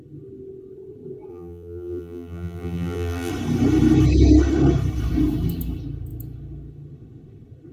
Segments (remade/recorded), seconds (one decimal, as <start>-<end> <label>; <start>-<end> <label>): 0.0-1.3 recorded; 1.3-3.3 remade; 3.3-7.7 recorded